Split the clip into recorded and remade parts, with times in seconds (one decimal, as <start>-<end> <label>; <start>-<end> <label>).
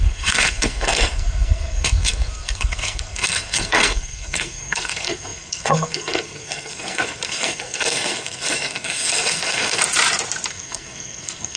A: 0.0-9.8 remade; 9.8-10.5 recorded; 10.5-11.6 remade